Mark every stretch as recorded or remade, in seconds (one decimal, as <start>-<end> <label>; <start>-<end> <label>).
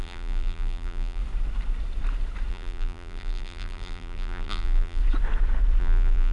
0.0-1.2 remade; 1.2-2.5 recorded; 2.5-5.0 remade; 5.0-5.8 recorded; 5.8-6.3 remade